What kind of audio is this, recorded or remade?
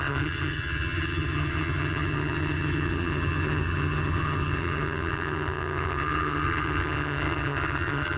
remade